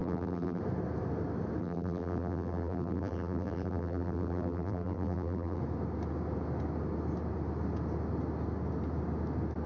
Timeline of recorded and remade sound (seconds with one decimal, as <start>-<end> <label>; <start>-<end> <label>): 0.0-0.6 remade; 0.6-1.6 recorded; 1.6-5.6 remade; 5.6-9.7 recorded